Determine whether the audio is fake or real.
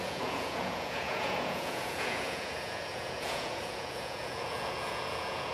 fake